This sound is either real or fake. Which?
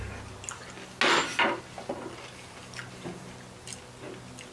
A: real